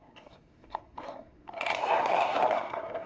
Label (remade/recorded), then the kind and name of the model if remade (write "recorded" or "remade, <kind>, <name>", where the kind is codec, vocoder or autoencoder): remade, codec, SNAC